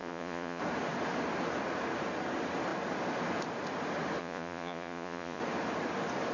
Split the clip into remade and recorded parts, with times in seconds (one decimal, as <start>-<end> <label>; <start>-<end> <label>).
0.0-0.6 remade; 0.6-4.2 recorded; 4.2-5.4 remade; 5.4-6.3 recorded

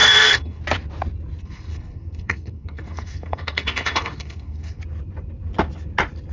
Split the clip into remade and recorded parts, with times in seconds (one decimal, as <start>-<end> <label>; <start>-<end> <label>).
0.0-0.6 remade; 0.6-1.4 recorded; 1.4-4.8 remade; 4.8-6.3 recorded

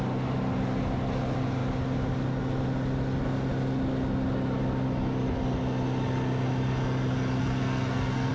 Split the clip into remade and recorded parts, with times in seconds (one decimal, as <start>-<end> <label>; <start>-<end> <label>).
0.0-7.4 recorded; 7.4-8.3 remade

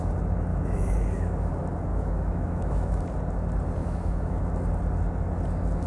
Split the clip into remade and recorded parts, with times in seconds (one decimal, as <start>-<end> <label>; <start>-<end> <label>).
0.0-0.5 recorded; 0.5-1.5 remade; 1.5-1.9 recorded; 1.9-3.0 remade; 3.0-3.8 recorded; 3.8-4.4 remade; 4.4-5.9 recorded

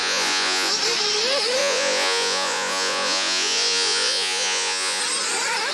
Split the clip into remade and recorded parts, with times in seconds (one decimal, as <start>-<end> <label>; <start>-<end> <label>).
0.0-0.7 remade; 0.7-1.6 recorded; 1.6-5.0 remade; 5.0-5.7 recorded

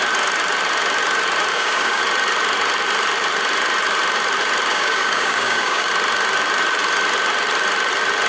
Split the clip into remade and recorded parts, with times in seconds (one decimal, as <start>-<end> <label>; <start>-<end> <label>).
0.0-1.5 recorded; 1.5-2.0 remade; 2.0-4.7 recorded; 4.7-5.9 remade; 5.9-8.3 recorded

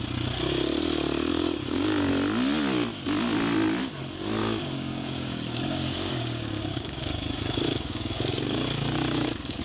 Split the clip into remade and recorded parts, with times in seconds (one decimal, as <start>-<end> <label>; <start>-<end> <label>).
0.0-1.3 recorded; 1.3-2.1 remade; 2.1-4.4 recorded; 4.4-9.6 remade

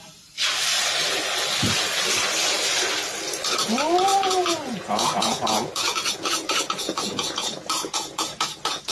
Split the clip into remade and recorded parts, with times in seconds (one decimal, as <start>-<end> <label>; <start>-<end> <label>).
0.0-4.1 recorded; 4.1-8.9 remade